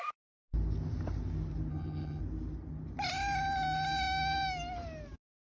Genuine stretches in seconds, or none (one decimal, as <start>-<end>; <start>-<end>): 0.0-1.7; 2.2-5.5